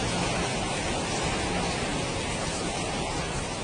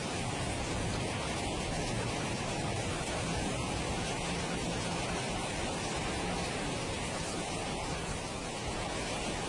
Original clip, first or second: first